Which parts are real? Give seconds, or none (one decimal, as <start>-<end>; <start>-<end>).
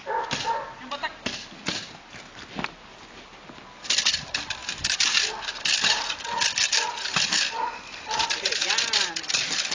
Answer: 0.0-9.7